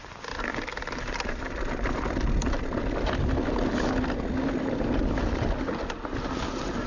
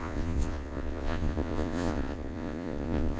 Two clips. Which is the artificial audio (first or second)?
second